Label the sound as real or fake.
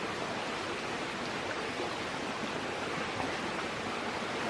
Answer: real